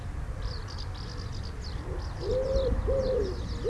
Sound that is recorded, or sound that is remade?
recorded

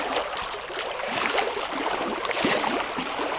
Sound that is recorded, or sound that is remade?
recorded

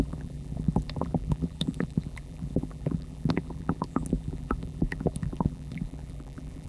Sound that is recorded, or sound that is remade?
remade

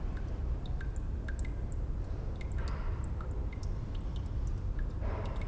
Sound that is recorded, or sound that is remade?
recorded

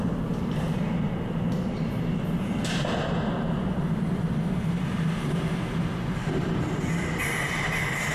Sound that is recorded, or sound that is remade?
remade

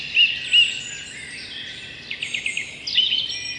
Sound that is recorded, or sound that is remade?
recorded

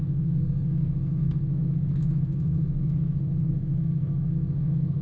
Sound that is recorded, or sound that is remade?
remade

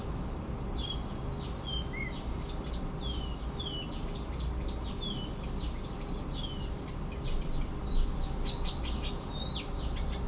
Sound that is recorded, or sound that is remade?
recorded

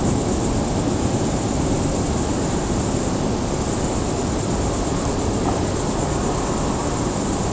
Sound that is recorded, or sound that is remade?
recorded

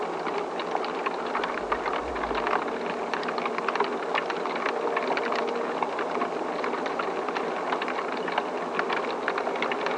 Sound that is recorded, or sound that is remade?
recorded